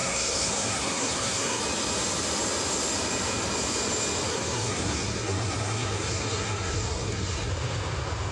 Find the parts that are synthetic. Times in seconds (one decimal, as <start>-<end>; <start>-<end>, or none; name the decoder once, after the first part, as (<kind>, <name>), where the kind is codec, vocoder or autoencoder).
0.0-1.6 (codec, SNAC); 4.3-7.5